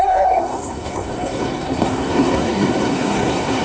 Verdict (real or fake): fake